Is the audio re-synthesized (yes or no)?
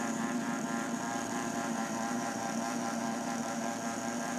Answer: yes